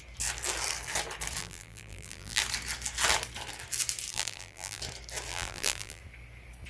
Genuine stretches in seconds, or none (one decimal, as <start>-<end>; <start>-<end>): 0.0-1.4; 2.4-4.1; 4.8-5.3; 6.0-6.7